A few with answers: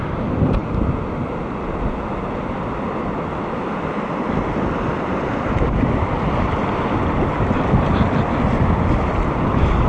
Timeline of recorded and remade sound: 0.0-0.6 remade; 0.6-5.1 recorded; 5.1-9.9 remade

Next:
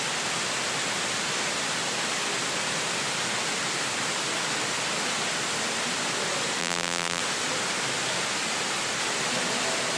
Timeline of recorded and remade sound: 0.0-6.6 recorded; 6.6-7.2 remade; 7.2-10.0 recorded

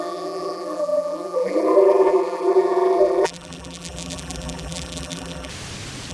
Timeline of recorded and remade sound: 0.0-5.5 remade; 5.5-6.1 recorded